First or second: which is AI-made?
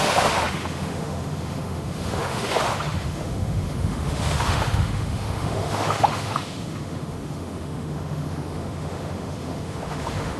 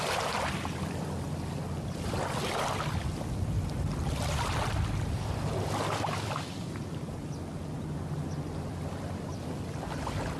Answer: first